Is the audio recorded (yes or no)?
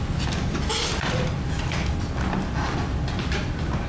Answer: yes